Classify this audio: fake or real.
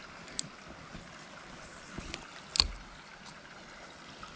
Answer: real